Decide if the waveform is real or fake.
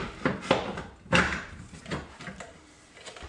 real